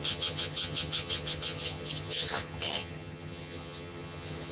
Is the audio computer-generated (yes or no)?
yes